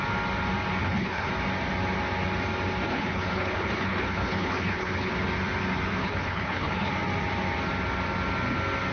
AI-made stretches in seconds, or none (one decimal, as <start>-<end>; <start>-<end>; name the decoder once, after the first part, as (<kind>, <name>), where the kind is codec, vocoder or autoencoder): 0.8-1.3 (codec, HILCodec); 2.9-5.1; 6.0-6.9